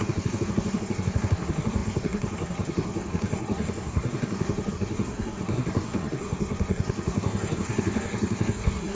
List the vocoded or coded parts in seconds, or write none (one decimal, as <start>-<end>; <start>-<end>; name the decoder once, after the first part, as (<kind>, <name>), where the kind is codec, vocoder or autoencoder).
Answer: 0.0-8.9 (codec, SNAC)